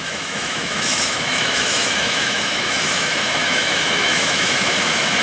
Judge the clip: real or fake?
fake